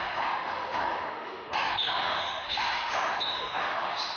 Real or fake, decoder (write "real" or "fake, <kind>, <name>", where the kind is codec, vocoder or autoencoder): fake, autoencoder, DAC-VAE